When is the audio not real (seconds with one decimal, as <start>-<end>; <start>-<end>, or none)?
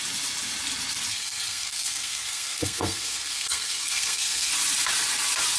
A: 1.1-4.5